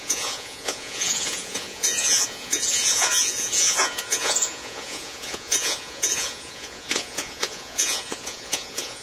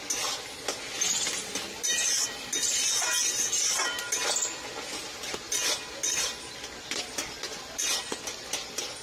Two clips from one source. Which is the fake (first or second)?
first